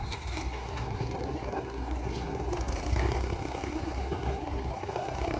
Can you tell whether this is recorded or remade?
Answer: remade